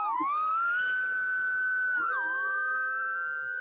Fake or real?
real